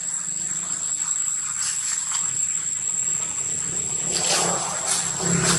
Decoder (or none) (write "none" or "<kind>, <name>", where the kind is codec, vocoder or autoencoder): none